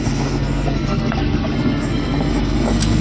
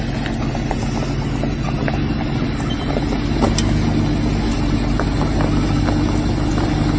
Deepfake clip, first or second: first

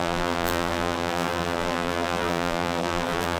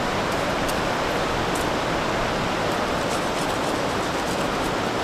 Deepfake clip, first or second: first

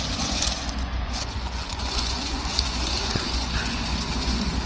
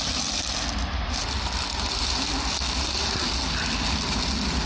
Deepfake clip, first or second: first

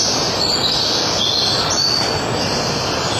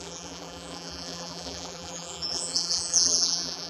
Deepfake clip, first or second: second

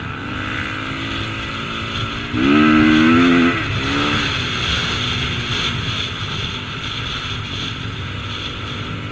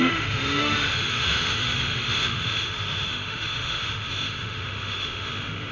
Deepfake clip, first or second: second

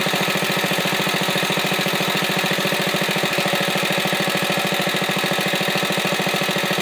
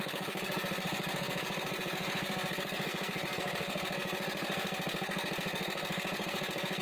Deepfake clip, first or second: second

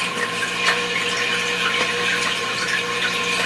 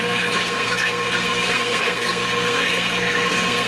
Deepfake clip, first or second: second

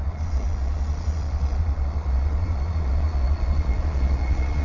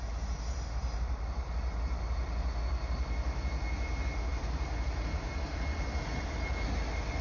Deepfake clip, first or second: first